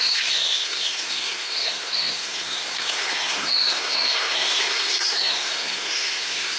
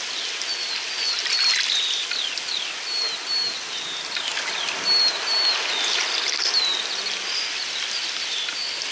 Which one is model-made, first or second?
first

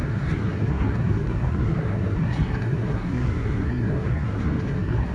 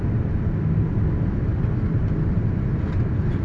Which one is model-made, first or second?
first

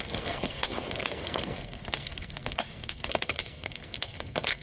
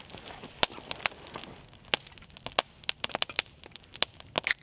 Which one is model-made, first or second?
first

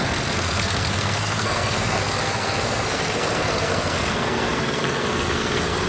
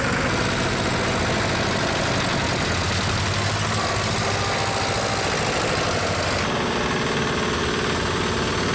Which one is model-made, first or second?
first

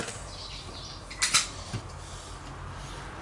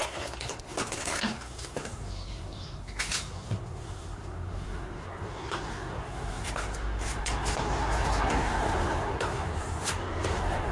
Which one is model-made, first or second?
second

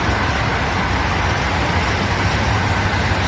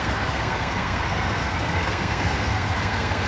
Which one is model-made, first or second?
second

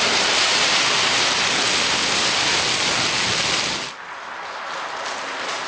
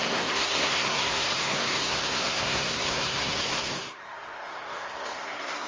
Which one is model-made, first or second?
second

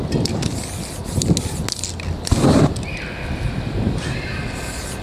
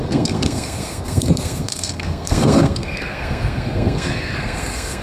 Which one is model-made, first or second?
second